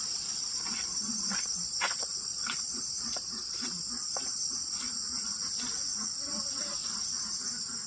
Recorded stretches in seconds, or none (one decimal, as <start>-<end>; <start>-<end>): 5.3-7.9